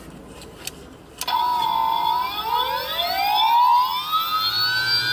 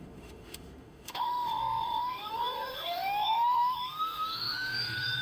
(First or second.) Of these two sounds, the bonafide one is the first